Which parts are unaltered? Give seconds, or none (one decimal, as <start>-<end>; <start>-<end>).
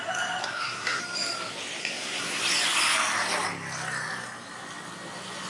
0.0-0.4; 1.0-1.8; 2.4-5.5